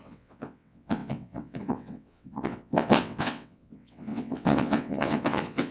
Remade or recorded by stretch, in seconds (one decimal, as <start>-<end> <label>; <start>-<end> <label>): 0.0-5.7 remade